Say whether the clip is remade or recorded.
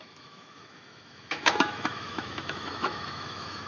remade